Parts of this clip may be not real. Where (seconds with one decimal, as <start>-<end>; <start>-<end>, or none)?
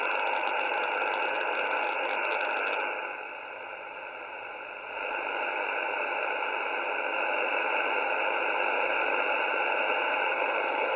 none